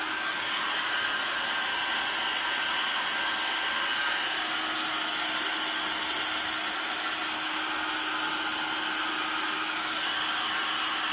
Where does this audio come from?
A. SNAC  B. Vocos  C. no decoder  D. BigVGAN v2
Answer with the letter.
C